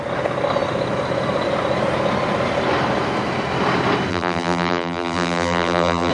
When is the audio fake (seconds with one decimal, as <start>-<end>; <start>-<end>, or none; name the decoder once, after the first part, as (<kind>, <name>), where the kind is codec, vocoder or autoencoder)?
4.1-6.1 (vocoder, BigVGAN v2)